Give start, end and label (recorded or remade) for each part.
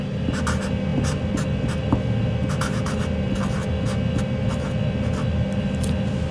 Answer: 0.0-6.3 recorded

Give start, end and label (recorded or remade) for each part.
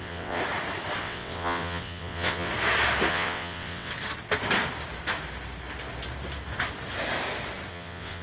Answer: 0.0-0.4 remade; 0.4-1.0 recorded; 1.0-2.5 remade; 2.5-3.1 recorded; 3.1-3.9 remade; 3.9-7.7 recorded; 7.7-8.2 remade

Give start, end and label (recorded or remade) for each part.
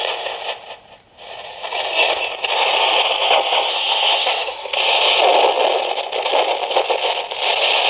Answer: 0.0-3.7 recorded; 3.7-4.8 remade; 4.8-7.9 recorded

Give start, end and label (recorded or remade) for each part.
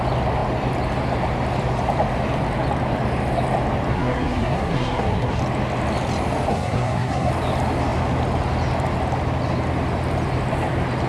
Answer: 0.0-3.9 recorded; 3.9-5.4 remade; 5.4-6.5 recorded; 6.5-7.3 remade; 7.3-11.1 recorded